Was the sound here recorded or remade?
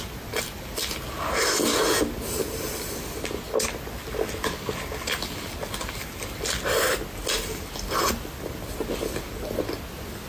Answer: recorded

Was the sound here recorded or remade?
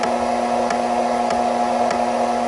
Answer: recorded